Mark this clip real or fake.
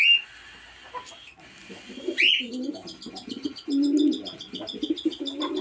real